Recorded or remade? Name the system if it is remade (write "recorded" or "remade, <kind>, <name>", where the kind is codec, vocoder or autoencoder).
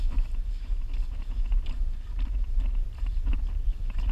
recorded